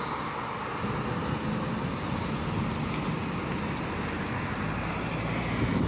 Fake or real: real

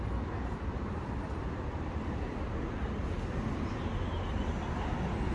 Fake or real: real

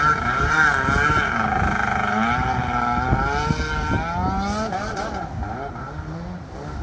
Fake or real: real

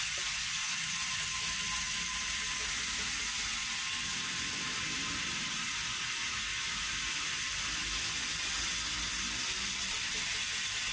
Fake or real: real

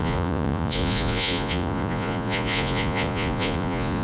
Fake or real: fake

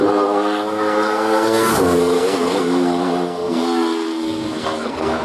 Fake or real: fake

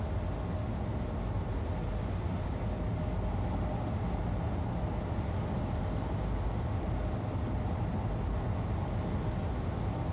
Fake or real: real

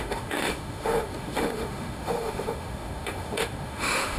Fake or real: fake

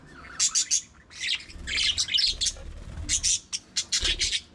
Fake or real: real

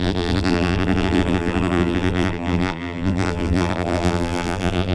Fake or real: fake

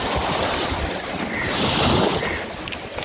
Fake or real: real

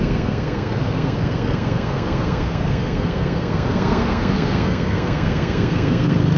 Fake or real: fake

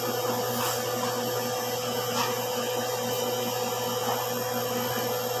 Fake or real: real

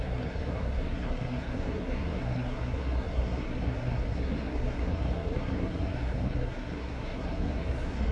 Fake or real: fake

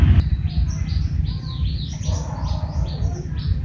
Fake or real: real